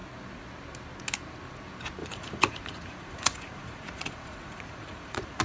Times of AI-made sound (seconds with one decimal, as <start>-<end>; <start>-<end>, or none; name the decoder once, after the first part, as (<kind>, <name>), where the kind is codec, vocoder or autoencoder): 2.0-5.4 (vocoder, Vocos)